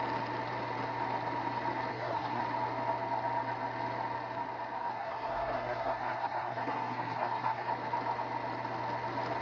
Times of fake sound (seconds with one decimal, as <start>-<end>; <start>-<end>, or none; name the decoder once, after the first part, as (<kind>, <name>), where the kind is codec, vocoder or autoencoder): 1.9-2.4 (codec, SNAC); 4.9-7.7

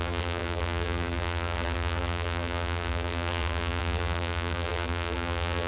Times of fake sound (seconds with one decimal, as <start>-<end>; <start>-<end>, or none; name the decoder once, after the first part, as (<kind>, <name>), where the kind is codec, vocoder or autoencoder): 0.0-5.7 (vocoder, BigVGAN v2)

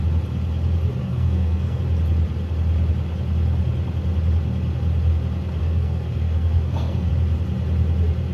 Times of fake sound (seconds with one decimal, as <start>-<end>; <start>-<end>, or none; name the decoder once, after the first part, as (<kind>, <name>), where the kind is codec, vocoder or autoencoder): 1.0-1.8 (codec, SNAC); 5.6-7.1